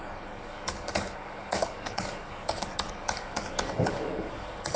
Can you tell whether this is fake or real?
fake